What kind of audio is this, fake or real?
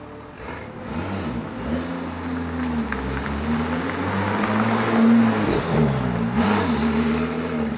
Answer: real